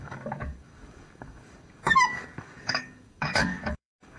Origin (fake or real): fake